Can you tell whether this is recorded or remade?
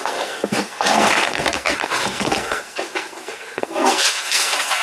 remade